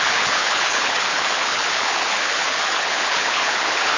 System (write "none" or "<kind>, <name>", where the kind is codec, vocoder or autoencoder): codec, HILCodec